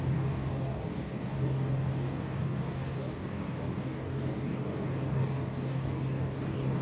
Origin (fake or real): fake